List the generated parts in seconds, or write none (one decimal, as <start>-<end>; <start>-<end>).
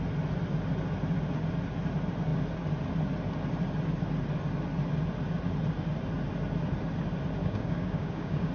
7.4-8.5